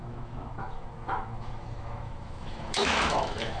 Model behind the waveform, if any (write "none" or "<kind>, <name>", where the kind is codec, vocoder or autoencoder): autoencoder, DAC-VAE